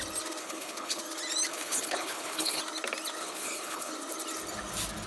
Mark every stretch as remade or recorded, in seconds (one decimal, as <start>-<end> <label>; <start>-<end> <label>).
0.0-0.4 recorded; 0.4-1.0 remade; 1.0-1.5 recorded; 1.5-2.6 remade; 2.6-3.2 recorded; 3.2-3.9 remade; 3.9-5.1 recorded

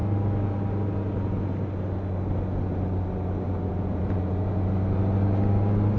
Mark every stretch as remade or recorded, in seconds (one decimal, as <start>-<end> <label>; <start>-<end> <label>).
0.0-3.7 recorded; 3.7-4.5 remade; 4.5-6.0 recorded

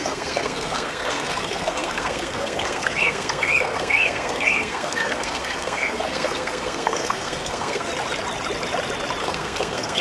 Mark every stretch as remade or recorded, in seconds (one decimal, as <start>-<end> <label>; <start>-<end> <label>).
0.0-7.9 remade; 7.9-9.2 recorded; 9.2-10.0 remade